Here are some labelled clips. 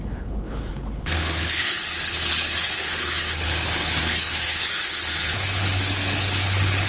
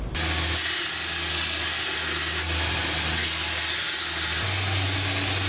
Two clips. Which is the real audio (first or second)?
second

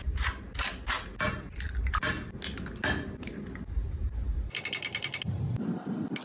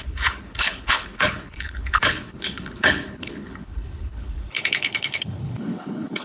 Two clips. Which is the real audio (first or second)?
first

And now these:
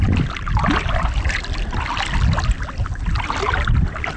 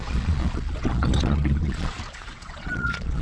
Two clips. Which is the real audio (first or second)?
first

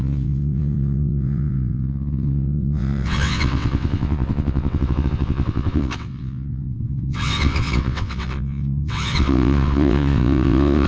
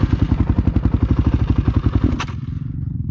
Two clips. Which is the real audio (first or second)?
second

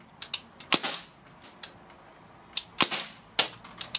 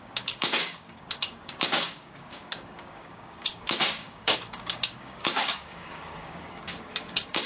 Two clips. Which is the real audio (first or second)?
first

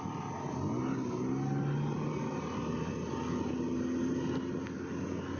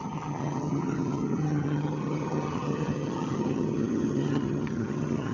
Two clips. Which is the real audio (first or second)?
first